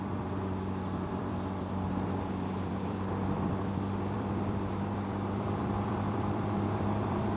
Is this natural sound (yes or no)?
no